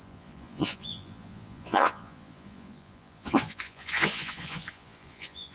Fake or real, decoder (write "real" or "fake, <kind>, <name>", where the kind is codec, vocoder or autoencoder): fake, vocoder, Vocos